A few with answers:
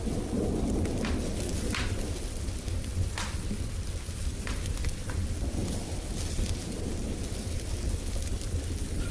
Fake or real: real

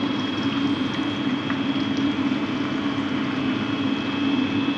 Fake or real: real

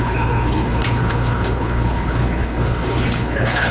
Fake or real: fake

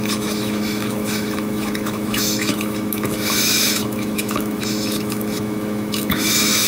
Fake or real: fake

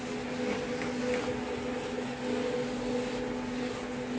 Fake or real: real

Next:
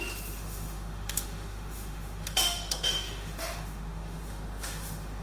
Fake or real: fake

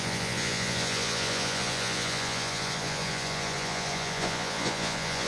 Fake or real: fake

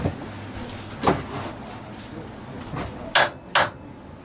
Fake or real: real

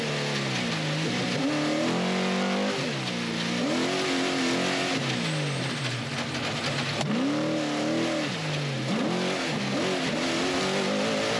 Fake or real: real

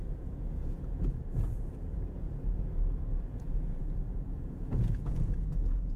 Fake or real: fake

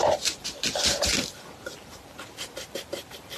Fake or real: real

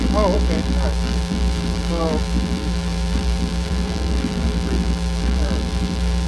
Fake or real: fake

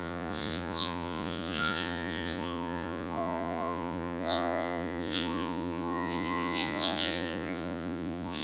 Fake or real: fake